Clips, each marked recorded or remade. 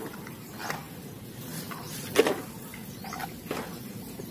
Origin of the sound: recorded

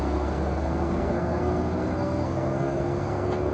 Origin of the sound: remade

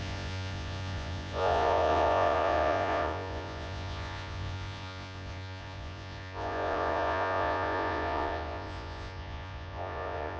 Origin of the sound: remade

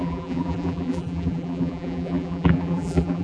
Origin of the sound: remade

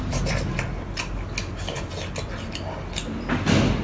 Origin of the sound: recorded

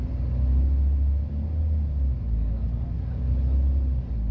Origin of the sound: recorded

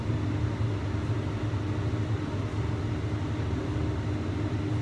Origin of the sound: recorded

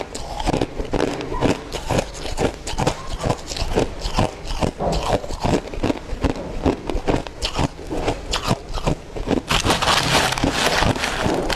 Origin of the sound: recorded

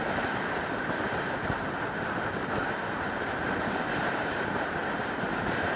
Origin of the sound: remade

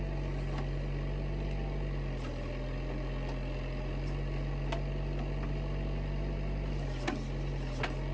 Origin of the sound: recorded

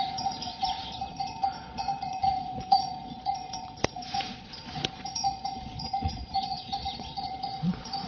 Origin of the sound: remade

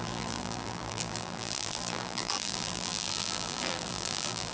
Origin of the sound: remade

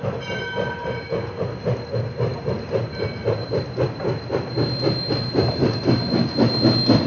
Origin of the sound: recorded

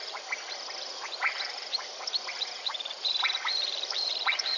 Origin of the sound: remade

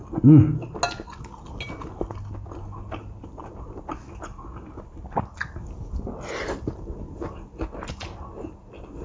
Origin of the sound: recorded